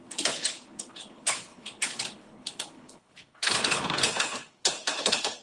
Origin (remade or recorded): remade